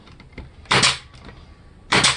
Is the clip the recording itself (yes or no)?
yes